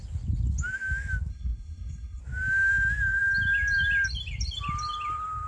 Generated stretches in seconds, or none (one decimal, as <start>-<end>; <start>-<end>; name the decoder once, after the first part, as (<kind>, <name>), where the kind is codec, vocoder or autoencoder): 1.3-2.2 (codec, SNAC)